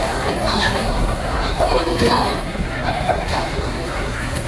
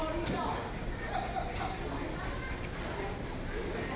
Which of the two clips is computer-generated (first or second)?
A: first